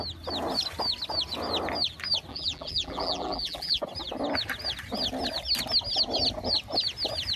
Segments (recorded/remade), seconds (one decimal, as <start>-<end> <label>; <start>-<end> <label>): 0.0-2.3 recorded; 2.3-3.8 remade; 3.8-7.4 recorded